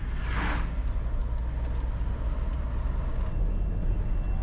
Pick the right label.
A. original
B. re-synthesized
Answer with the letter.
A